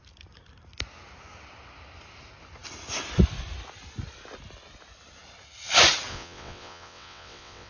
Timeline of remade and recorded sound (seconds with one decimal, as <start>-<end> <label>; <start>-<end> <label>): 0.0-6.1 recorded; 6.1-7.7 remade